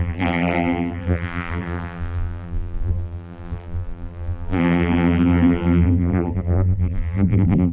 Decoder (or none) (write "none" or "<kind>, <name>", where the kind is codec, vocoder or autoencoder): vocoder, BigVGAN v2